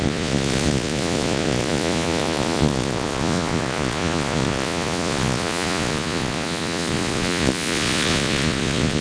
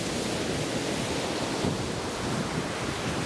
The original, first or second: second